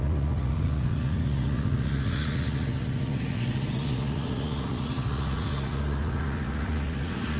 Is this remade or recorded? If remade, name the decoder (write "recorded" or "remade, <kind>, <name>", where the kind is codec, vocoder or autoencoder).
remade, vocoder, Vocos